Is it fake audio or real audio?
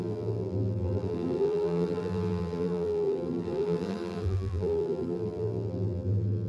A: fake